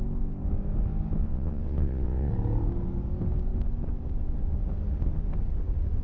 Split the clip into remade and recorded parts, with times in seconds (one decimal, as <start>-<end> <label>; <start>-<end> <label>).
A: 0.0-1.2 recorded; 1.2-2.3 remade; 2.3-6.0 recorded

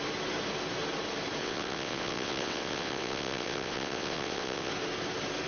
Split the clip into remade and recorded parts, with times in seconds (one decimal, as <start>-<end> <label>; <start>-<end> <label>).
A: 0.0-1.4 recorded; 1.4-4.7 remade; 4.7-5.5 recorded

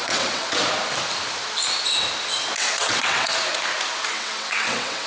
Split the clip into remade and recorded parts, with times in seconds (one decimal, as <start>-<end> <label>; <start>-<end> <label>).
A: 0.0-0.6 remade; 0.6-2.6 recorded; 2.6-3.3 remade; 3.3-4.1 recorded; 4.1-5.1 remade

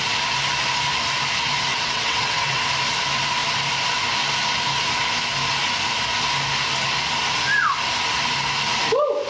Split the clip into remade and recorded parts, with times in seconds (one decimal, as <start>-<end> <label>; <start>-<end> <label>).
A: 0.0-1.7 recorded; 1.7-2.6 remade; 2.6-9.3 recorded